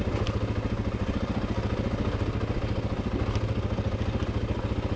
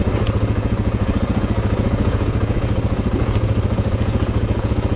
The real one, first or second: first